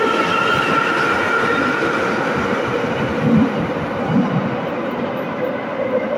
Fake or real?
real